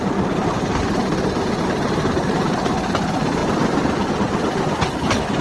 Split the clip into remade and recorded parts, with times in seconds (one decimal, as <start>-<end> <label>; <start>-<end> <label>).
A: 0.0-3.4 remade; 3.4-4.1 recorded; 4.1-4.5 remade; 4.5-5.4 recorded